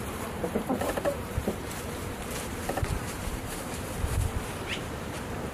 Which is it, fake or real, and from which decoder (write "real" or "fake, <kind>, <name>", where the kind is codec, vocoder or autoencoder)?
fake, vocoder, BigVGAN v2